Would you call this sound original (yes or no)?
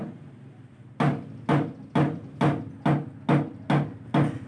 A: yes